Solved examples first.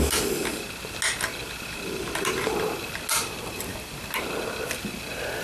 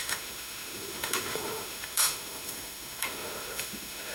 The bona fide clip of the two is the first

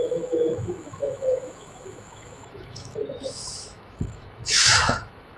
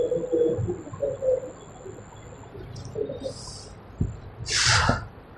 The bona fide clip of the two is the second